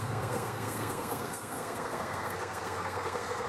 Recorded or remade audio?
remade